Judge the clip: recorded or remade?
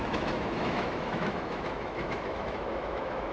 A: remade